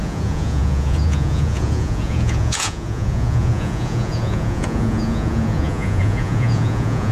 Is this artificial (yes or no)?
yes